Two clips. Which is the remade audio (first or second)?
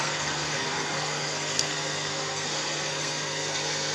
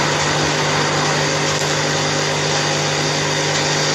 first